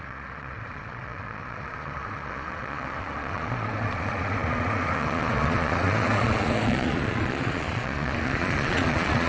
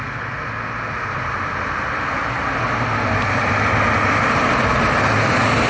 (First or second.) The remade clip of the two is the first